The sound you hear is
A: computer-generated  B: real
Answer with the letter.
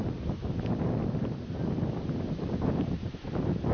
B